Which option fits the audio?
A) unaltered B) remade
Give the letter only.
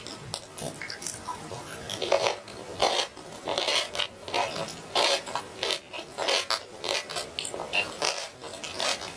A